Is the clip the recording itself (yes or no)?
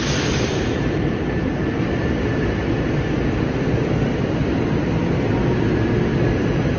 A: yes